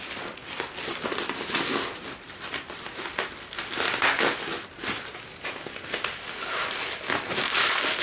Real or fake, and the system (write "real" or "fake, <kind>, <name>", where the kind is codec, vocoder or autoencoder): real